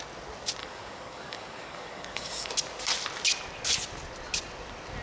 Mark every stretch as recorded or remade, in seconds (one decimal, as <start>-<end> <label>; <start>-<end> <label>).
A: 0.0-0.6 recorded; 0.6-2.5 remade; 2.5-5.0 recorded